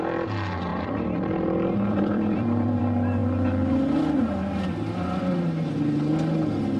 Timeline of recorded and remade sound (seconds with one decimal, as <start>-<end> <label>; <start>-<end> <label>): 0.0-0.7 recorded; 0.7-2.8 remade; 2.8-6.8 recorded